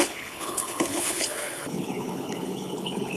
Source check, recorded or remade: remade